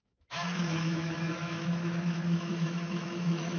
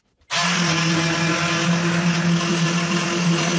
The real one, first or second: second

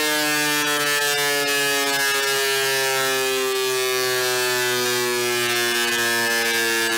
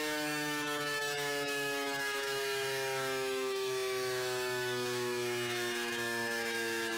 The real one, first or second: first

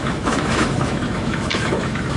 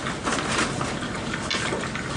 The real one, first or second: second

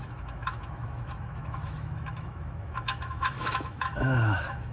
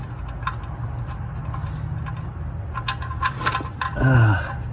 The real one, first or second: second